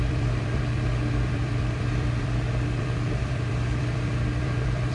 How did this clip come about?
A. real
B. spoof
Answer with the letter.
B